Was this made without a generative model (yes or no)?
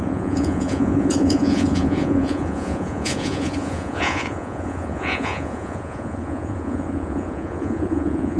no